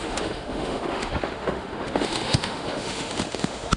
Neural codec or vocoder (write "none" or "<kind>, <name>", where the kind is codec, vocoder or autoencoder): autoencoder, DAC-VAE